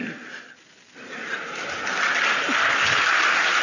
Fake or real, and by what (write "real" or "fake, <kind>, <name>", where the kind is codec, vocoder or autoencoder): real